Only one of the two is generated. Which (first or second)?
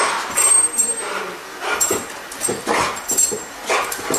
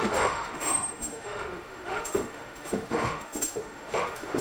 second